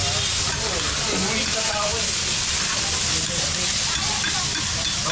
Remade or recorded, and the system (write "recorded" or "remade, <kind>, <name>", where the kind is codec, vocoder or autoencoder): recorded